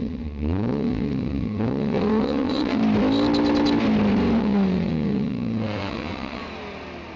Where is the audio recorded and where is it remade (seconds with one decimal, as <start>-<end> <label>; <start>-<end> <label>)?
0.0-2.8 remade; 2.8-4.4 recorded; 4.4-6.4 remade; 6.4-7.2 recorded